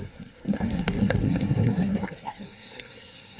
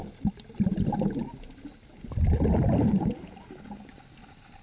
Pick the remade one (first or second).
first